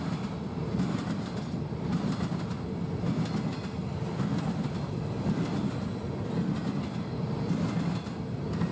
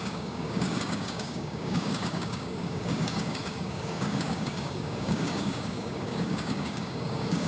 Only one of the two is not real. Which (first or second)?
second